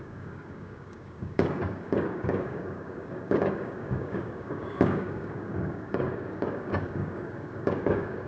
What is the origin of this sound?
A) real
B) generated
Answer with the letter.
B